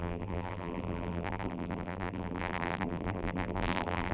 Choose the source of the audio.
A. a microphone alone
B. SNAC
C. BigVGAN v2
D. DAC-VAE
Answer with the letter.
C